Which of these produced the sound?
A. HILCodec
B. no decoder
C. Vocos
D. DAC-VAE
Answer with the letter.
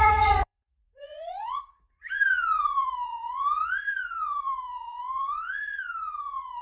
C